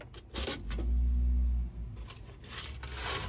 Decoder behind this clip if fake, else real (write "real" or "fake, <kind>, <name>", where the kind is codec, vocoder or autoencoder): real